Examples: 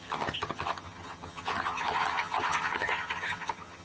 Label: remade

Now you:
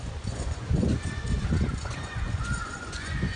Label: remade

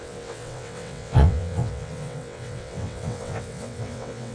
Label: remade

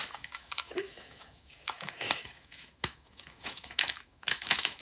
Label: remade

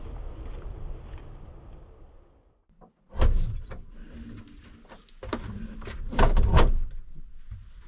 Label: recorded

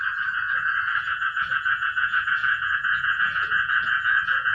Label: remade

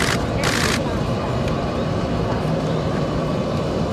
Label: remade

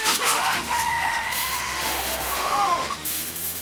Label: remade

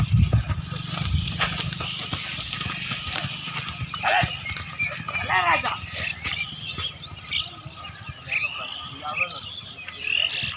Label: recorded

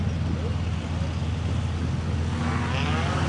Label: recorded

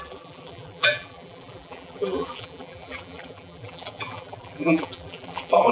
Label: remade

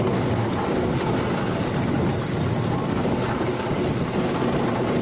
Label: recorded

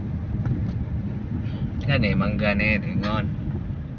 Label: recorded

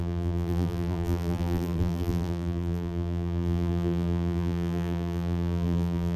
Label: remade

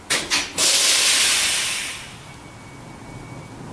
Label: recorded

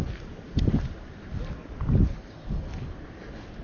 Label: recorded